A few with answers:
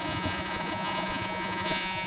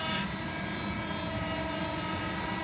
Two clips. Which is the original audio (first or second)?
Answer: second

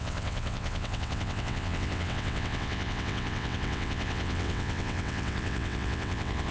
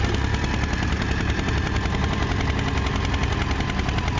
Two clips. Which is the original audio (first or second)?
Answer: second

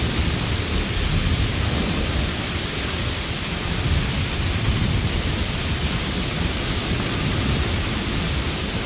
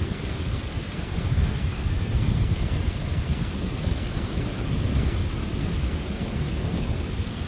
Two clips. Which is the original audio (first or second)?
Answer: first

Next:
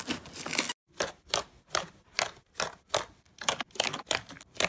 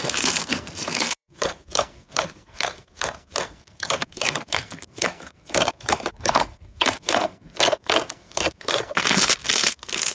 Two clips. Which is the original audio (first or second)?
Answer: first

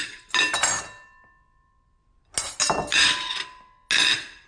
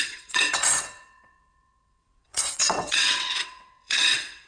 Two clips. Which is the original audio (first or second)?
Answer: first